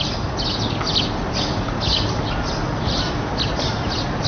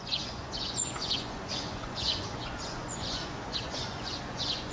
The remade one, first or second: second